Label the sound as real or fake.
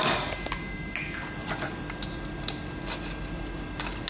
real